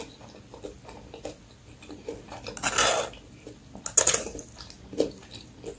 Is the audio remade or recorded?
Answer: recorded